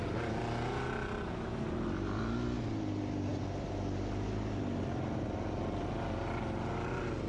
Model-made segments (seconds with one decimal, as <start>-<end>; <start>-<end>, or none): none